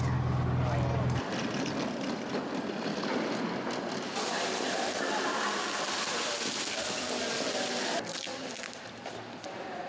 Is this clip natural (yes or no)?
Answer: yes